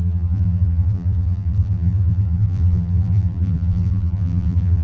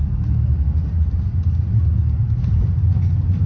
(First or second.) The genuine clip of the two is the second